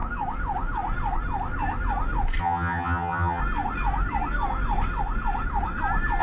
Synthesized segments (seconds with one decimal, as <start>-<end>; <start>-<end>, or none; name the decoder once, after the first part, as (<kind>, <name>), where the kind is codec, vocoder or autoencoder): 2.4-3.4 (vocoder, HiFi-GAN)